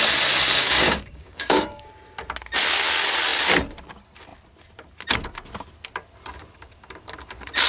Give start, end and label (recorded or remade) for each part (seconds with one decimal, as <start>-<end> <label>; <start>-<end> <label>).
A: 0.0-0.6 recorded; 0.6-1.9 remade; 1.9-7.7 recorded